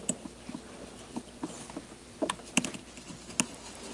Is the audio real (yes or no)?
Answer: yes